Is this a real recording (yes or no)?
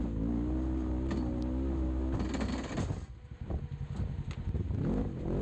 yes